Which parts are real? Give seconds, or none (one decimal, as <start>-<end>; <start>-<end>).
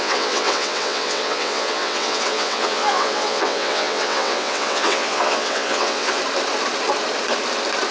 6.2-7.9